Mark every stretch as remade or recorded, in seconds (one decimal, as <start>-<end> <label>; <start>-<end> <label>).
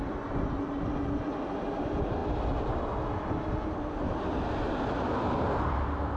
0.0-6.2 recorded